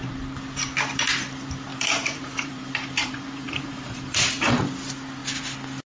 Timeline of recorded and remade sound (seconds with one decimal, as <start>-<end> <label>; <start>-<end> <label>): 0.0-1.7 recorded; 1.7-4.5 remade; 4.5-5.9 recorded

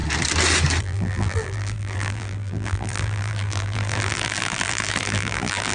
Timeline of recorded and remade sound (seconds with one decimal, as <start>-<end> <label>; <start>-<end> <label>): 0.0-0.8 recorded; 0.8-5.7 remade